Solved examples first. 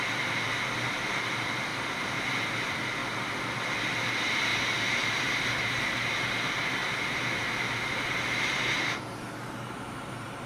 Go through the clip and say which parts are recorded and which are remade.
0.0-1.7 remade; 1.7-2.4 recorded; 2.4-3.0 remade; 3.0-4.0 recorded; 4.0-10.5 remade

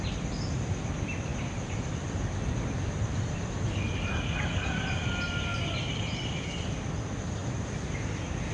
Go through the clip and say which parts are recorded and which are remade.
0.0-1.3 recorded; 1.3-3.7 remade; 3.7-7.4 recorded; 7.4-8.0 remade; 8.0-8.5 recorded